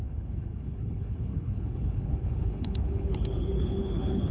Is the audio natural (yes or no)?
no